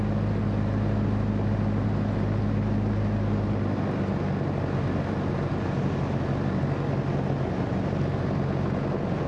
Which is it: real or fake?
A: real